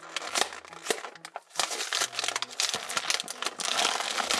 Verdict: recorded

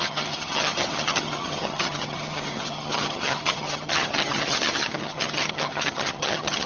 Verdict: remade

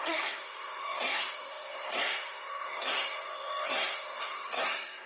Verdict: remade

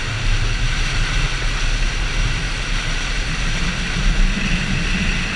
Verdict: recorded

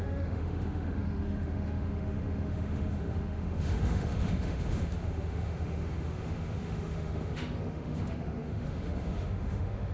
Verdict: remade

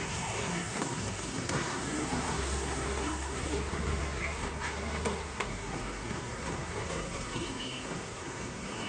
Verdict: remade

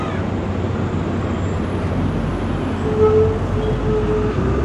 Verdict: recorded